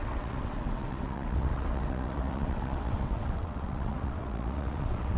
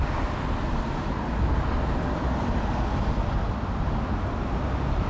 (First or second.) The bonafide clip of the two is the second